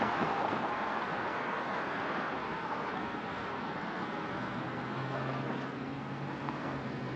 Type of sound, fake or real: fake